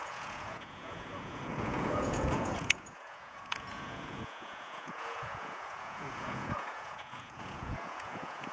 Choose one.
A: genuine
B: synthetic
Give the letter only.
B